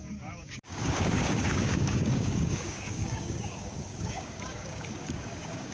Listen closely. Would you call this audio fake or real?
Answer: fake